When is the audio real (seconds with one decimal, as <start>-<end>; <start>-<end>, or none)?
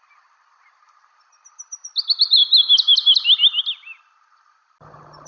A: 0.0-5.3